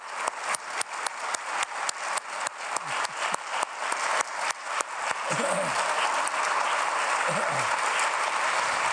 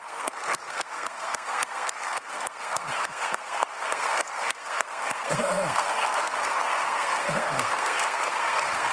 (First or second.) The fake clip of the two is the second